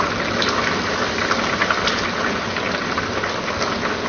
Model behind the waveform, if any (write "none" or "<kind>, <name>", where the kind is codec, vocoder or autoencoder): none